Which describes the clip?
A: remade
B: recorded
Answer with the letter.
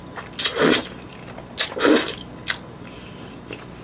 B